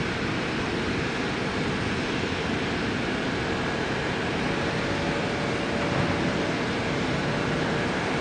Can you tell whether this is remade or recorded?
recorded